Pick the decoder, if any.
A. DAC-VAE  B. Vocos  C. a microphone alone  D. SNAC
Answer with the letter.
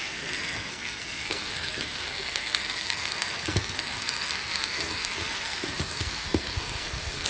D